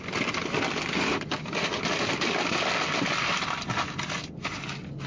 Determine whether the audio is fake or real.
real